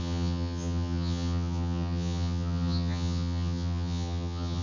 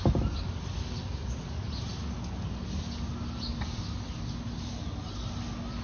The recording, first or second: second